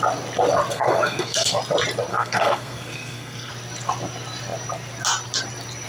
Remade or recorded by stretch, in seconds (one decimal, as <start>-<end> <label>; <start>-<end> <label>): 0.0-0.7 recorded; 0.7-1.6 remade; 1.6-2.1 recorded; 2.1-3.5 remade; 3.5-5.9 recorded